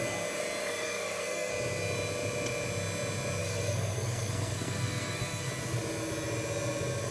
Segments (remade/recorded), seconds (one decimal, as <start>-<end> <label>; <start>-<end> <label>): 0.0-0.6 recorded; 0.6-1.5 remade; 1.5-3.4 recorded; 3.4-5.5 remade; 5.5-7.1 recorded